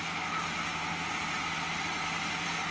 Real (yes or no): yes